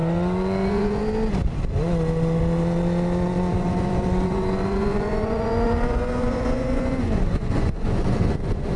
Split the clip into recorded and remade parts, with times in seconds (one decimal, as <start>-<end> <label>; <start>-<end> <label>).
0.0-1.0 remade; 1.0-3.5 recorded; 3.5-8.8 remade